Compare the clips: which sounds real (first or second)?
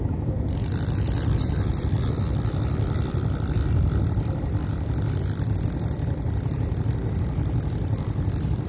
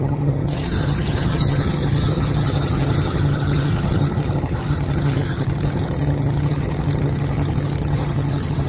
first